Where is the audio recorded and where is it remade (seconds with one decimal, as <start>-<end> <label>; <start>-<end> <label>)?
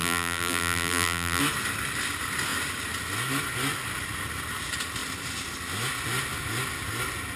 0.0-1.4 remade; 1.4-7.4 recorded